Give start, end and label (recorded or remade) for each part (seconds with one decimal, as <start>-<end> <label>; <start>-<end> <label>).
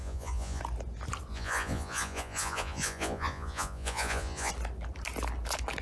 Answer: 0.0-0.6 remade; 0.6-1.3 recorded; 1.3-4.5 remade; 4.5-5.8 recorded